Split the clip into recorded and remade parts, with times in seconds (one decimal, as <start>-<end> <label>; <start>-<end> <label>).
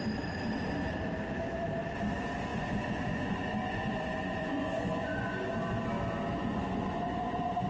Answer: 0.0-2.5 recorded; 2.5-5.5 remade; 5.5-6.4 recorded; 6.4-7.7 remade